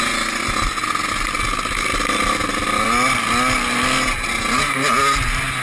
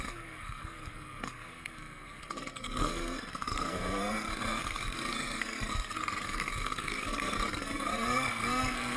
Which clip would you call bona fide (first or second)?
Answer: first